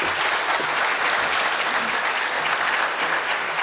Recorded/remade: recorded